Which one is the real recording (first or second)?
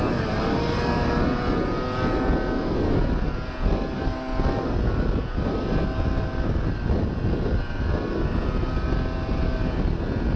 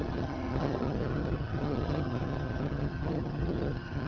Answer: first